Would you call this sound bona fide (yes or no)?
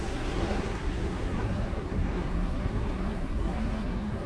no